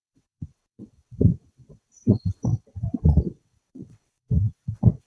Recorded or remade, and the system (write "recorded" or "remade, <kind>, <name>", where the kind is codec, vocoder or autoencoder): remade, vocoder, WaveNeXt